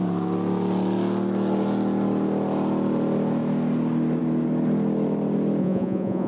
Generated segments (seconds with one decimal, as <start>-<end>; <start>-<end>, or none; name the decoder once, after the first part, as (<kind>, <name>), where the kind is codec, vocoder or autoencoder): 5.6-6.3 (vocoder, Vocos)